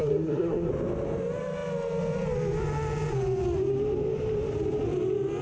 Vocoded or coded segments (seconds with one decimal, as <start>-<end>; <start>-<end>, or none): 0.0-0.7